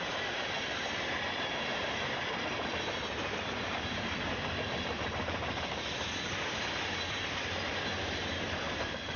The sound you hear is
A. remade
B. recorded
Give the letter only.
A